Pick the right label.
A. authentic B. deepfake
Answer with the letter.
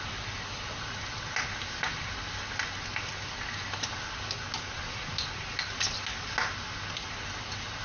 A